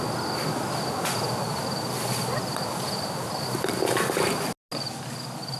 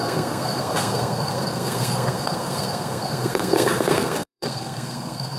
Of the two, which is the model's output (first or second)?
second